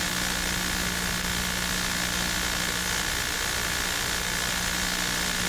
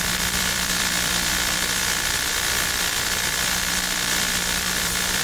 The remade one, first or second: second